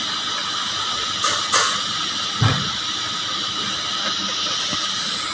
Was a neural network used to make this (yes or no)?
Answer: no